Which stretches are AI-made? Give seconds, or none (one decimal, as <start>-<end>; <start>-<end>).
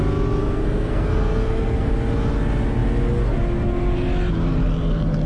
0.4-1.9